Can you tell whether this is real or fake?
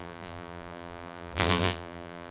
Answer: fake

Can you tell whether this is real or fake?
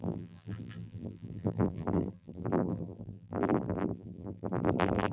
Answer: fake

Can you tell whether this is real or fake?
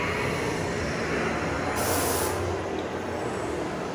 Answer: real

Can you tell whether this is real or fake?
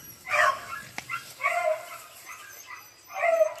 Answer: real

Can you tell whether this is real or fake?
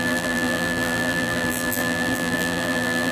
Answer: fake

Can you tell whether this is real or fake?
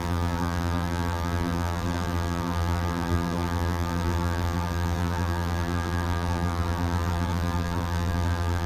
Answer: fake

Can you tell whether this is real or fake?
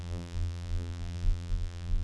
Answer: fake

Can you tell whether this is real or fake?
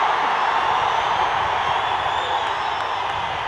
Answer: real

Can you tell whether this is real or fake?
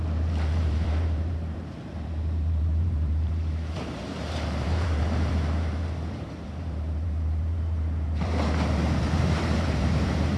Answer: fake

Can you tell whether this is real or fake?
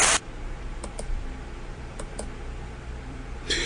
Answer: fake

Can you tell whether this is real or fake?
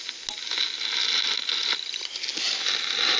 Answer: real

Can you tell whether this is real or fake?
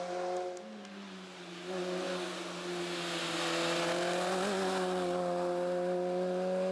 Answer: real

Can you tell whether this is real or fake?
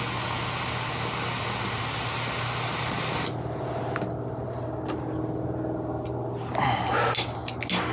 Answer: real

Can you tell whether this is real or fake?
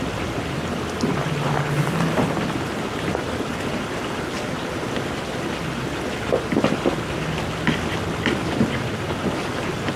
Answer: real